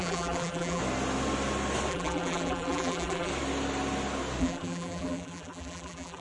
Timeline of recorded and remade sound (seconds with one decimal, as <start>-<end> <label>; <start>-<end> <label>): 0.0-0.8 remade; 0.8-1.9 recorded; 1.9-3.3 remade; 3.3-4.4 recorded; 4.4-6.2 remade